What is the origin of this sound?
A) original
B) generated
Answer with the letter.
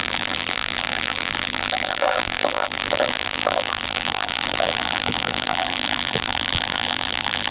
B